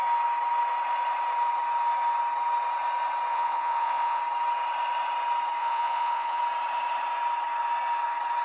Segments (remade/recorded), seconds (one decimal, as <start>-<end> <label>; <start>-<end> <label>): 0.0-3.3 recorded; 3.3-4.2 remade; 4.2-5.6 recorded; 5.6-6.4 remade; 6.4-8.4 recorded